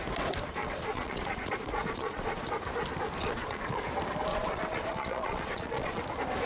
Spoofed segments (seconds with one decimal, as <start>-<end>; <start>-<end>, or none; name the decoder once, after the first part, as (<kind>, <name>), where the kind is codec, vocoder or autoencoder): 0.6-2.5 (vocoder, Vocos); 3.2-3.8; 4.3-6.0